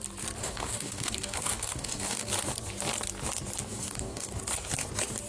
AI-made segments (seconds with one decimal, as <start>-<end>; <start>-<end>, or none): 0.4-2.3; 3.7-4.4